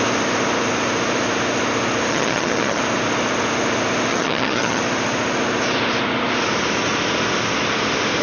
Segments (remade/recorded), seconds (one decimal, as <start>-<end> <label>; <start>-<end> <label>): 0.0-2.1 recorded; 2.1-2.8 remade; 2.8-4.1 recorded; 4.1-4.8 remade; 4.8-8.2 recorded